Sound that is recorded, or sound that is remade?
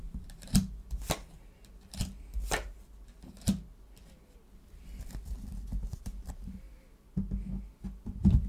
recorded